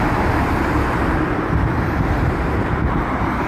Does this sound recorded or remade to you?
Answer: remade